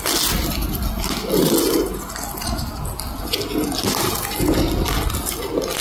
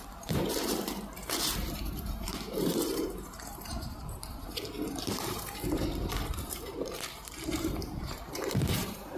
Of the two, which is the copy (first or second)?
second